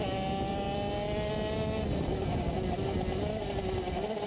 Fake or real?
real